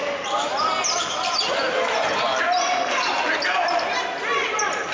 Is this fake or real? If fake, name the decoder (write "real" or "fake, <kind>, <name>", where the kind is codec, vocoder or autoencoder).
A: real